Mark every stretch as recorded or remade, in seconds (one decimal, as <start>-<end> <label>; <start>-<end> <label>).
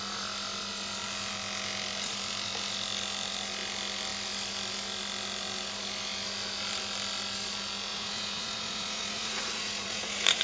0.0-7.9 recorded; 7.9-10.4 remade